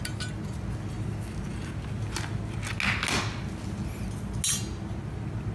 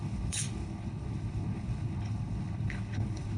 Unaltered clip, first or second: first